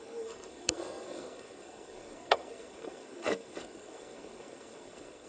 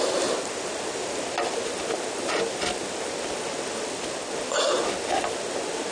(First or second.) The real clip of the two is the second